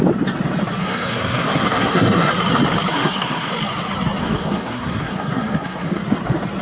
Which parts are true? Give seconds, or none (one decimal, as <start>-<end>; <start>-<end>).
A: 0.0-0.8; 2.3-2.9; 3.5-4.2; 6.0-6.6